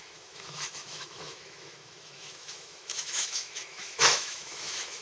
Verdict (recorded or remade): remade